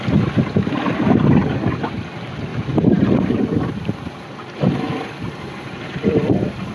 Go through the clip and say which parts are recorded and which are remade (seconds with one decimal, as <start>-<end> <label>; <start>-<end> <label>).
0.0-1.4 recorded; 1.4-2.0 remade; 2.0-2.5 recorded; 2.5-6.7 remade